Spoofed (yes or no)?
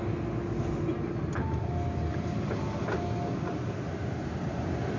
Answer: no